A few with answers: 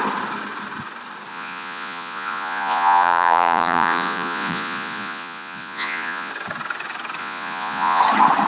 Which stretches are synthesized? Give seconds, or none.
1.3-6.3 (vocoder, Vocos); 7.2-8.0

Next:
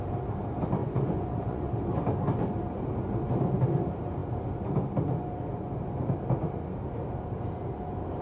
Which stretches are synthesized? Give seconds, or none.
0.8-1.7 (vocoder, Vocos)

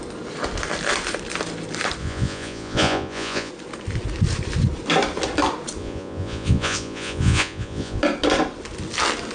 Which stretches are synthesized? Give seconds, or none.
2.0-3.5 (vocoder, Vocos); 5.8-8.0

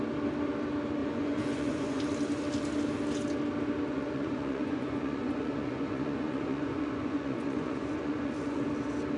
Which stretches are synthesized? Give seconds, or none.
1.0-2.0 (vocoder, Vocos); 3.9-8.6

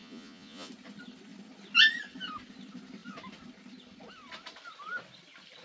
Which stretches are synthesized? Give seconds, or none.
0.0-0.7 (vocoder, Vocos)